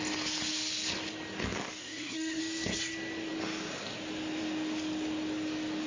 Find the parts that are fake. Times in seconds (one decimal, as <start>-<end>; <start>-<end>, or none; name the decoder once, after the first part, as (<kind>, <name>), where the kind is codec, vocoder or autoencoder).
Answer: 1.8-2.4 (codec, SNAC)

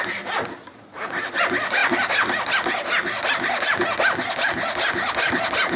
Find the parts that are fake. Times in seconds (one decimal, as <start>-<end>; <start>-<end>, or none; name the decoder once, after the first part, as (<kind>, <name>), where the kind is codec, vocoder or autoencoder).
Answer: none